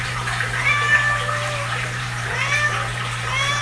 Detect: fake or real fake